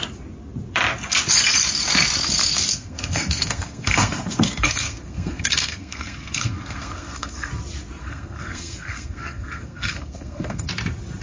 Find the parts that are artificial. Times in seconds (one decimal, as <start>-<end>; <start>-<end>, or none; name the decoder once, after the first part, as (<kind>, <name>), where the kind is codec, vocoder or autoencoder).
2.7-7.5 (codec, SNAC); 8.0-10.7